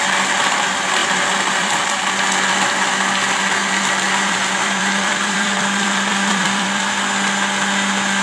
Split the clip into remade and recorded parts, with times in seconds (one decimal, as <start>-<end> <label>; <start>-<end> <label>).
0.0-1.0 recorded; 1.0-2.1 remade; 2.1-3.6 recorded; 3.6-7.0 remade; 7.0-8.2 recorded